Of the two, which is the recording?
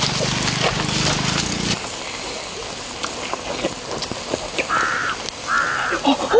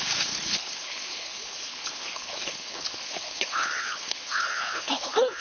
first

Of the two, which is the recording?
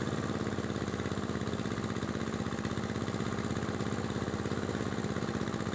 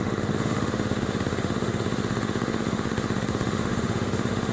first